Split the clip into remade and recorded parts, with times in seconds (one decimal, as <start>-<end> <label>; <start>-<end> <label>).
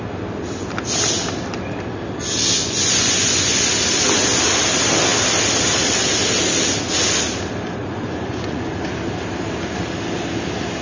0.0-2.6 recorded; 2.6-3.6 remade; 3.6-7.8 recorded; 7.8-8.7 remade; 8.7-10.8 recorded